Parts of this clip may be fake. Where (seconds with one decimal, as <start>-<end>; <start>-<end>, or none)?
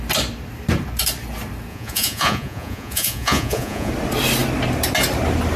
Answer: 1.7-3.9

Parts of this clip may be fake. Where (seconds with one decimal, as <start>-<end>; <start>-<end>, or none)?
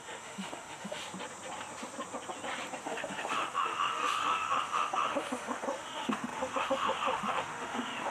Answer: 0.0-1.0; 2.8-8.1